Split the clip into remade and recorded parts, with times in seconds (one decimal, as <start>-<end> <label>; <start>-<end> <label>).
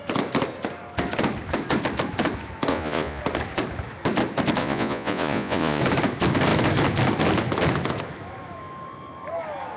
0.0-2.7 recorded; 2.7-3.2 remade; 3.2-4.6 recorded; 4.6-5.8 remade; 5.8-9.8 recorded